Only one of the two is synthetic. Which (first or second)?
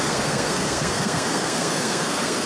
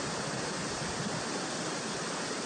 first